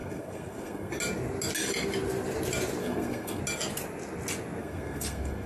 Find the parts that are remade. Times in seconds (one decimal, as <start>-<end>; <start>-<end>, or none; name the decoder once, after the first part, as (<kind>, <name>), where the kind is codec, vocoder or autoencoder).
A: 0.0-0.9 (codec, SNAC); 2.8-3.4; 4.6-5.5